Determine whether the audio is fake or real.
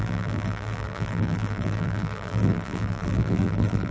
fake